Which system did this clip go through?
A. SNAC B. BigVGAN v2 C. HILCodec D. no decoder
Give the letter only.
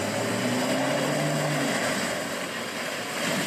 D